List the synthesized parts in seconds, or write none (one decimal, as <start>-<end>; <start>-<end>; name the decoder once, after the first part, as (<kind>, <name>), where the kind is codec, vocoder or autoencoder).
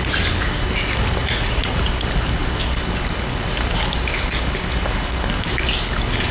1.2-1.9 (vocoder, Vocos)